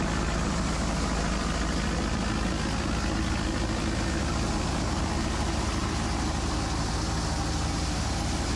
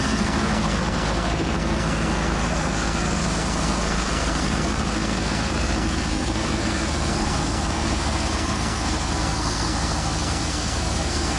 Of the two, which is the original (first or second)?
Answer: first